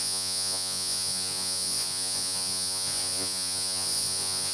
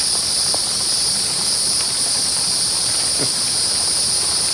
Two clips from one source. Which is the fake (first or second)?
first